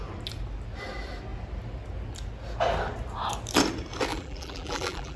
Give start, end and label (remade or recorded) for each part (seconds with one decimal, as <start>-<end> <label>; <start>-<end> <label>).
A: 0.0-4.1 recorded; 4.1-5.2 remade